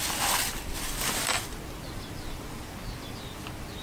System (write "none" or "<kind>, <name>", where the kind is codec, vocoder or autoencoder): none